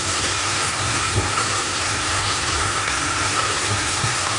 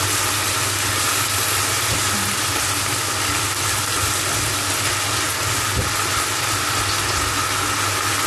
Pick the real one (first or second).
second